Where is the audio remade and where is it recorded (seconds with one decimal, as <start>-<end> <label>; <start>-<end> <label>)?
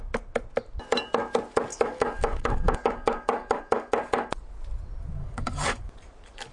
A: 0.0-1.7 recorded; 1.7-4.3 remade; 4.3-5.2 recorded; 5.2-5.8 remade; 5.8-6.5 recorded